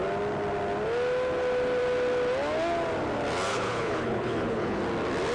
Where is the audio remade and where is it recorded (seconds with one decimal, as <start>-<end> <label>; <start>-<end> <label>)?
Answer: 0.0-3.5 recorded; 3.5-4.8 remade; 4.8-5.3 recorded